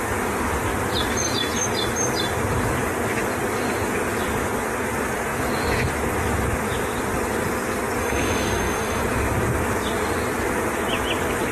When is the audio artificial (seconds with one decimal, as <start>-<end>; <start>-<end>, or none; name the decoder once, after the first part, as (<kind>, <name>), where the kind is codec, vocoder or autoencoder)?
8.0-9.0 (autoencoder, DAC-VAE)